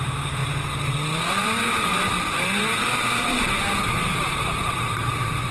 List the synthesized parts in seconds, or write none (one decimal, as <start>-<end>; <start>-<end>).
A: 0.0-0.4; 1.3-5.5